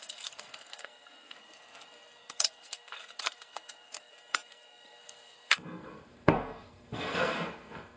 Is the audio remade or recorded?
remade